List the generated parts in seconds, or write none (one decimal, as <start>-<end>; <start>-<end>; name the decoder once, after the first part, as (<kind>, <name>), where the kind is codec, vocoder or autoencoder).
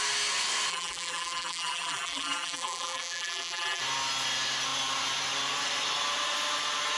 0.7-3.8 (vocoder, BigVGAN v2)